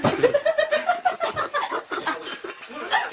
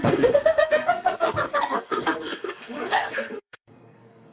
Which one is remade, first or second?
second